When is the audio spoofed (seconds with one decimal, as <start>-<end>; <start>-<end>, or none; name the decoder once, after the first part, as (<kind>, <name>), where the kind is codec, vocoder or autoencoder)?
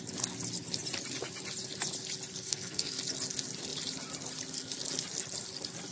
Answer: 2.4-3.0 (codec, SNAC)